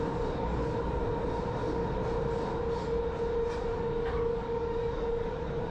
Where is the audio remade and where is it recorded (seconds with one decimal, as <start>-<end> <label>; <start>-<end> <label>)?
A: 0.0-1.0 remade; 1.0-3.7 recorded; 3.7-5.7 remade